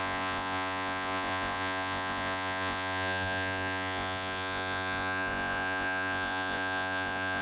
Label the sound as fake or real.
fake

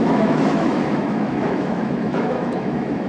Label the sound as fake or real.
fake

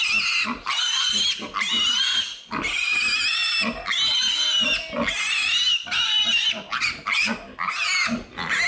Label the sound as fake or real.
real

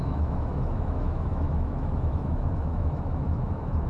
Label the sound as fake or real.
fake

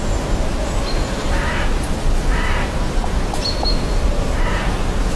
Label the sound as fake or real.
real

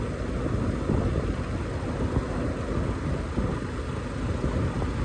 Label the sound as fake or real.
real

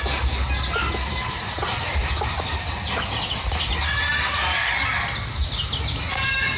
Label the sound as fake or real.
real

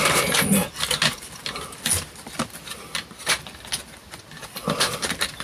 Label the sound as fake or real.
real